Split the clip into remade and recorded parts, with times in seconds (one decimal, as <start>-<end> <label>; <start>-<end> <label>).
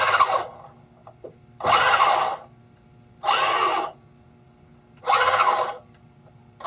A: 0.0-6.7 recorded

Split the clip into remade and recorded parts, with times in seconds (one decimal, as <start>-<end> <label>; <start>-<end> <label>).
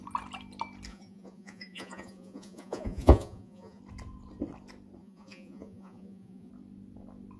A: 0.0-0.9 recorded; 0.9-3.8 remade; 3.8-5.0 recorded; 5.0-6.5 remade; 6.5-7.4 recorded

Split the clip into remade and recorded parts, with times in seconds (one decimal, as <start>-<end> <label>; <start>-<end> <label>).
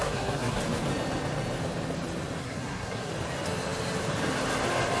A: 0.0-0.6 remade; 0.6-2.4 recorded; 2.4-3.1 remade; 3.1-5.0 recorded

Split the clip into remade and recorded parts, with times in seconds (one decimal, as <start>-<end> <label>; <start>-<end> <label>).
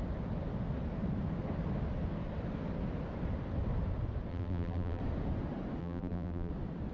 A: 0.0-4.3 recorded; 4.3-5.0 remade; 5.0-5.8 recorded; 5.8-6.5 remade; 6.5-6.9 recorded